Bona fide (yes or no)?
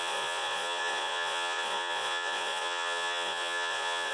no